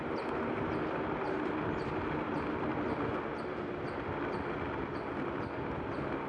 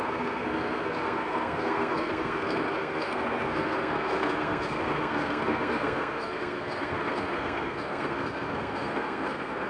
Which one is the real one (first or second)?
first